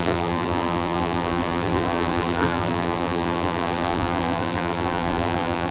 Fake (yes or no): yes